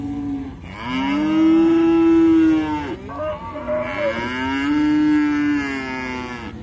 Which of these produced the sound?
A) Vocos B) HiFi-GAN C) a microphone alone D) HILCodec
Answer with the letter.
C